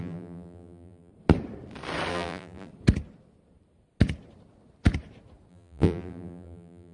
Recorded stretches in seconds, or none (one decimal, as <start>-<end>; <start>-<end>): 1.1-2.1; 2.7-5.5

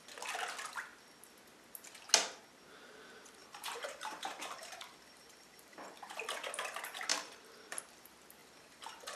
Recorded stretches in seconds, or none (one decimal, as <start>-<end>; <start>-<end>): 0.0-3.4; 6.5-7.1; 7.8-8.4

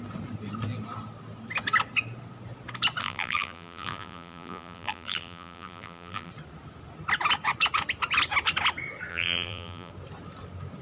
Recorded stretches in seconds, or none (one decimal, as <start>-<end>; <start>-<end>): 0.0-3.0; 6.3-9.1; 9.9-10.8

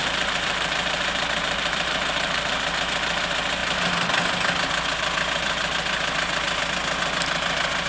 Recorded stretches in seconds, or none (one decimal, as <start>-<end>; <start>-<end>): 3.2-7.9

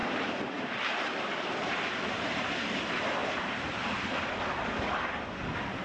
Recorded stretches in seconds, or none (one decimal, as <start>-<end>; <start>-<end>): 2.4-3.2; 4.3-5.8